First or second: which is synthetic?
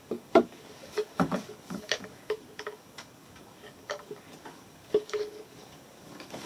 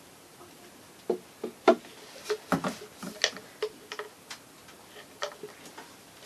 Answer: first